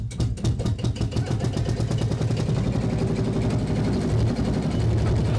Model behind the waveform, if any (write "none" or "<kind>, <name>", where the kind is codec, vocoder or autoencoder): none